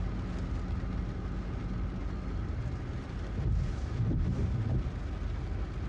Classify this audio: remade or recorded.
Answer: recorded